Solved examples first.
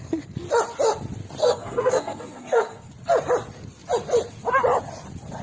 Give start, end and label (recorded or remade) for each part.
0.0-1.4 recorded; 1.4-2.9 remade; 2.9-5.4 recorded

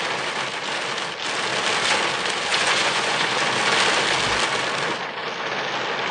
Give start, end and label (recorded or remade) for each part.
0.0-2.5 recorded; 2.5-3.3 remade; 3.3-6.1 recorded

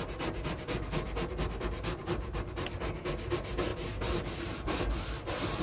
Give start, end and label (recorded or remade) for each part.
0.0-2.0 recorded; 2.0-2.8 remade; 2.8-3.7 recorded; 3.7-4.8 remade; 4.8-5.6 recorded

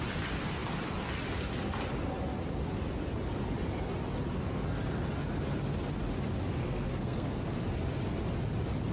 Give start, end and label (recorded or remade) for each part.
0.0-6.6 recorded; 6.6-7.6 remade; 7.6-8.9 recorded